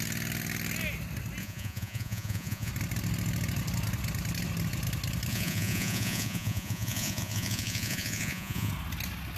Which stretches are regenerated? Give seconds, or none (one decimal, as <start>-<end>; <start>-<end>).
1.4-2.7; 5.3-8.7